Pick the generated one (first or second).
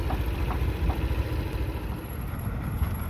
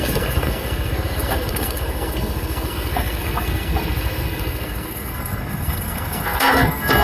second